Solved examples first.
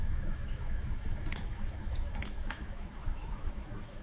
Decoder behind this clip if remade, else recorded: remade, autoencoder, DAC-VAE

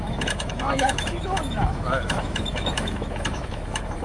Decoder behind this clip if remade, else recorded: remade, autoencoder, DAC-VAE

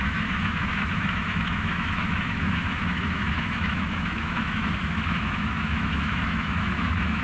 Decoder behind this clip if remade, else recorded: remade, autoencoder, DAC-VAE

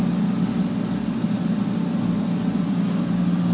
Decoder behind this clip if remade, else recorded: recorded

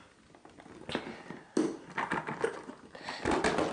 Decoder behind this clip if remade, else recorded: recorded